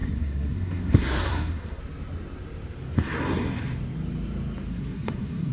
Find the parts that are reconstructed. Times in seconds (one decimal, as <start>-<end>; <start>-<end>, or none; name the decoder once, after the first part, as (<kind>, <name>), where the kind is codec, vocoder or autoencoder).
0.0-1.8 (codec, SNAC); 4.7-5.5